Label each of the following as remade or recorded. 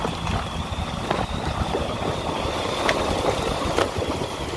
recorded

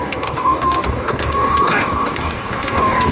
remade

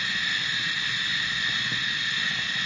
recorded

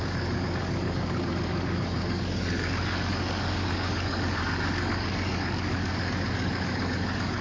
remade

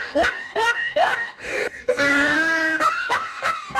remade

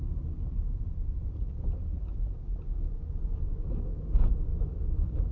recorded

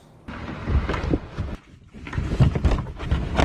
recorded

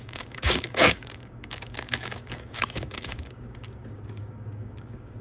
remade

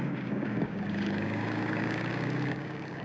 remade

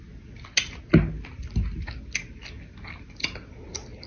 recorded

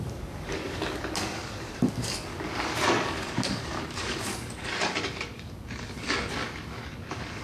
remade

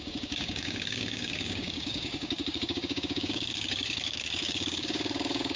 remade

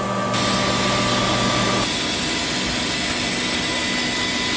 recorded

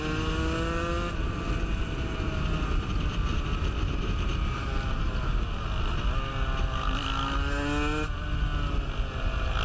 recorded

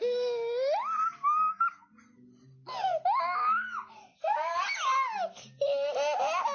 recorded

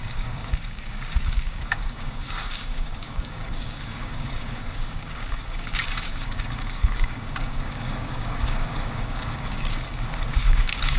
remade